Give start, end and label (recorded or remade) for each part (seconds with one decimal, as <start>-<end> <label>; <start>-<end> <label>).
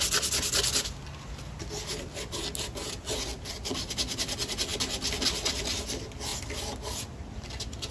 0.0-7.9 recorded